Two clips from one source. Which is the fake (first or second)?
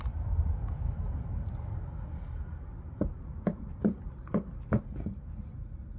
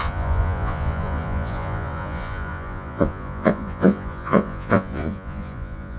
second